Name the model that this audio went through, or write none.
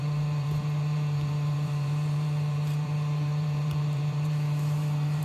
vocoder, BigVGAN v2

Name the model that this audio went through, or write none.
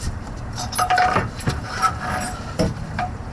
vocoder, BigVGAN v2